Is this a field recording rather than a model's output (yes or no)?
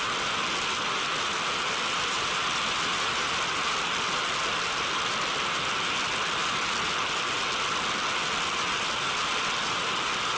yes